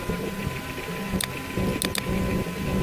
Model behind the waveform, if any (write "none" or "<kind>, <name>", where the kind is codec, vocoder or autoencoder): none